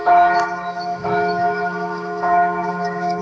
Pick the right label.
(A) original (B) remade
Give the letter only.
B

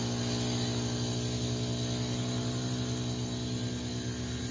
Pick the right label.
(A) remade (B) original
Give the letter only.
B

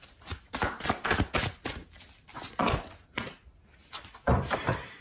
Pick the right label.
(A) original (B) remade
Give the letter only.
A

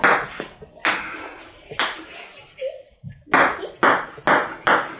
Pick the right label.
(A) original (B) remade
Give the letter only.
A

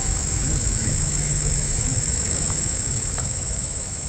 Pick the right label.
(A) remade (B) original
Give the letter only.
A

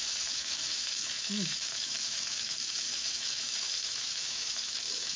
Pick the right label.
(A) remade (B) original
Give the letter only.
A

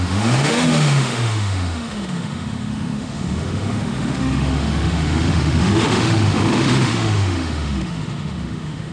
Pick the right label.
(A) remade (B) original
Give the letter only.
A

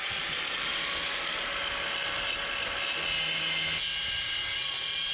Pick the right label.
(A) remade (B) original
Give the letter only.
B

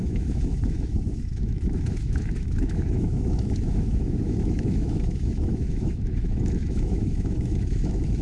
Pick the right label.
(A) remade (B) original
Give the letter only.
A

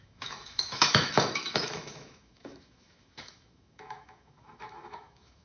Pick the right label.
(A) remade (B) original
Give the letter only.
A